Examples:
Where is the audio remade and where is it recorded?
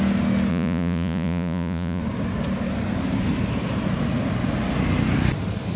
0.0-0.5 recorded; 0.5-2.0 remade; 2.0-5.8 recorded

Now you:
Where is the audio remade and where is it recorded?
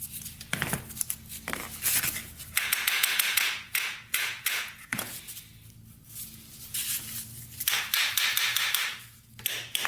0.0-2.2 recorded; 2.2-5.2 remade; 5.2-9.9 recorded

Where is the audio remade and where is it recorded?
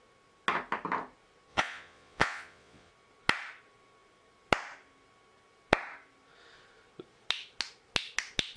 0.0-1.5 recorded; 1.5-2.9 remade; 2.9-8.6 recorded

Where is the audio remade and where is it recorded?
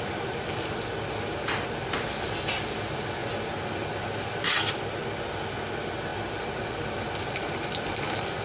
0.0-8.4 recorded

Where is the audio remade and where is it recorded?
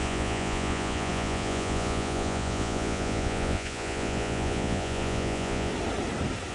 0.0-5.7 remade; 5.7-6.5 recorded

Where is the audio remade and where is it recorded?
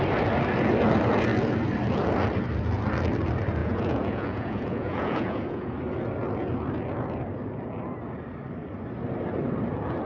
0.0-3.6 recorded; 3.6-5.7 remade; 5.7-10.1 recorded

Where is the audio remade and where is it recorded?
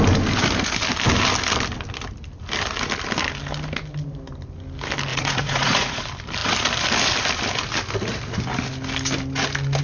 0.0-5.1 recorded; 5.1-6.0 remade; 6.0-9.8 recorded